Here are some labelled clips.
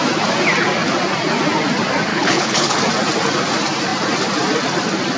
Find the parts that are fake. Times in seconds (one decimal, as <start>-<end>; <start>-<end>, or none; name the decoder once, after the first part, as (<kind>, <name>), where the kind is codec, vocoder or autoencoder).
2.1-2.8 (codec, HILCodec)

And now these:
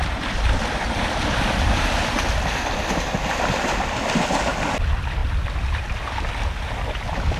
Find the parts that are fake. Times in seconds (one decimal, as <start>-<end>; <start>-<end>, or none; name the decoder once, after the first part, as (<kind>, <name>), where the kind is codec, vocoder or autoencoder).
none

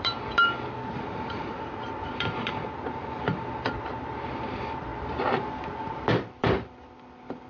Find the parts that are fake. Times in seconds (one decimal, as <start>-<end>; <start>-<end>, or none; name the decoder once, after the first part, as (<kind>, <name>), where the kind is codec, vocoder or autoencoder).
0.0-4.9 (vocoder, BigVGAN v2); 5.6-7.5